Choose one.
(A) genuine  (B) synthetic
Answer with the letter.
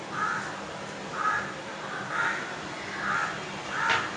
A